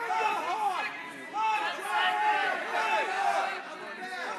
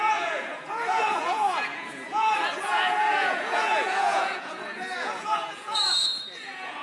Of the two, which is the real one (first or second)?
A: first